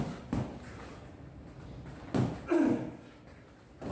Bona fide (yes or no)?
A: yes